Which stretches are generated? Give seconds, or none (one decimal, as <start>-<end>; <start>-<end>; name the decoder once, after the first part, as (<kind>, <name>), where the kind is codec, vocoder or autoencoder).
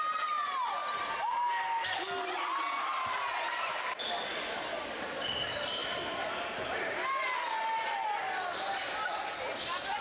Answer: none